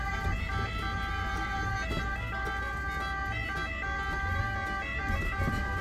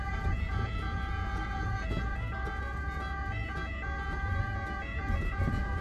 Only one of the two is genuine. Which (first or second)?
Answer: first